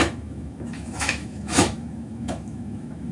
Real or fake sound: fake